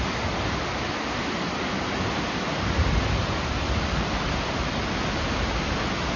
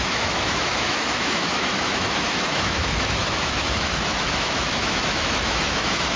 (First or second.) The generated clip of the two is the second